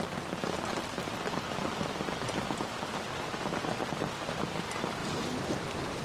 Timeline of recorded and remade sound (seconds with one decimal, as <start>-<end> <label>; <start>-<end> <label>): 0.0-5.0 recorded; 5.0-6.0 remade